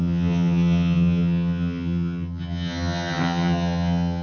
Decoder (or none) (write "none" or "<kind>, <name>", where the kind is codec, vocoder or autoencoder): vocoder, HiFi-GAN